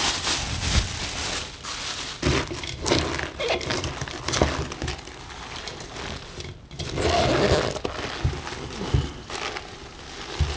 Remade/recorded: recorded